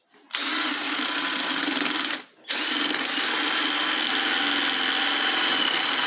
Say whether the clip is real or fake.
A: real